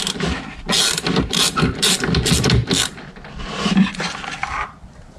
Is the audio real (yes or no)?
no